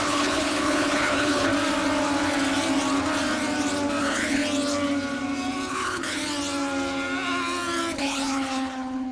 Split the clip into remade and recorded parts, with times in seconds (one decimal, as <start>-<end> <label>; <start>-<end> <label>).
0.0-1.5 remade; 1.5-4.0 recorded; 4.0-4.4 remade; 4.4-5.7 recorded; 5.7-6.2 remade; 6.2-8.0 recorded; 8.0-9.1 remade